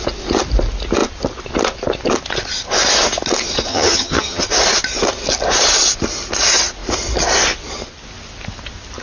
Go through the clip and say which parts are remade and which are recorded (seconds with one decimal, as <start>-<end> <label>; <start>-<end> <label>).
0.0-3.7 recorded; 3.7-4.4 remade; 4.4-9.0 recorded